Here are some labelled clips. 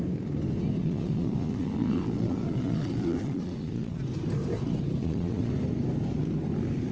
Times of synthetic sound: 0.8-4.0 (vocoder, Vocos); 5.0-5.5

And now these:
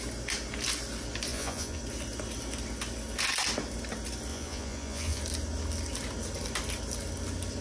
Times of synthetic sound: 1.3-1.8 (vocoder, Vocos); 4.3-5.2

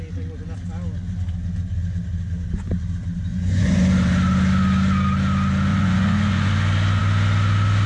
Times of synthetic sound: 3.3-3.8 (vocoder, Vocos); 5.7-6.5